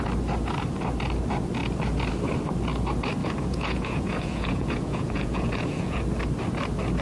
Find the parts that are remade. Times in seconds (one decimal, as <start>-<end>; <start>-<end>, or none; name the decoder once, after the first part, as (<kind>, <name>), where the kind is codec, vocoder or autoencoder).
3.2-6.0 (vocoder, Vocos)